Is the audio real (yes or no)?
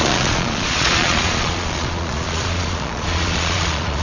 no